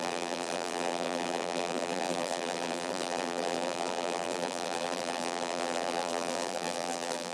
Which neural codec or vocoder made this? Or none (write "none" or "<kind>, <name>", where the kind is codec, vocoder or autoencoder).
vocoder, BigVGAN v2